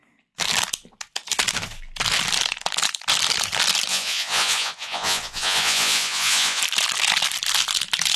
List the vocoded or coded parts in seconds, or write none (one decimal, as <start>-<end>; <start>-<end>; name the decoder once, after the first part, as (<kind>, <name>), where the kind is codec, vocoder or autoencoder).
3.9-6.6 (vocoder, Vocos)